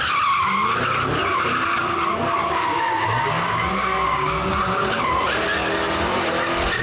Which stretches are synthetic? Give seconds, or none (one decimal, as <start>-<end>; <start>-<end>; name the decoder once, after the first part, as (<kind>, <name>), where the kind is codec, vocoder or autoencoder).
2.4-4.6 (codec, DAC)